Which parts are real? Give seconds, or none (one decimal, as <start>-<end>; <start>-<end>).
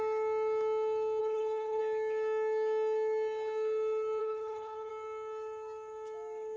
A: 0.0-1.2; 1.8-4.2; 4.9-6.6